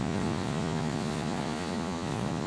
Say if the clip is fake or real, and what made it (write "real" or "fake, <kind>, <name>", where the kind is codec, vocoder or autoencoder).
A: fake, vocoder, Vocos